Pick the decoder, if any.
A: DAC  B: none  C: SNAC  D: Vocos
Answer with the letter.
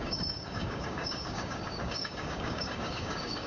A